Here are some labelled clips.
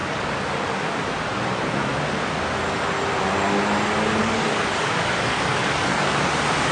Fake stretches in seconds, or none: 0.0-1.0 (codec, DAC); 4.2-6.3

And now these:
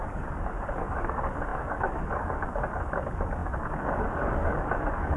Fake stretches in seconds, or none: 0.0-5.2 (codec, DAC)

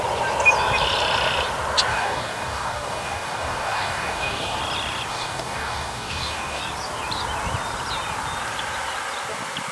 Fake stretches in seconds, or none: 1.9-4.6 (codec, DAC); 5.1-6.6

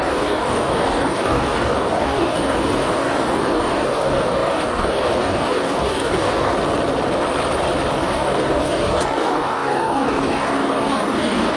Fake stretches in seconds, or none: 0.0-6.5 (codec, DAC); 7.9-11.6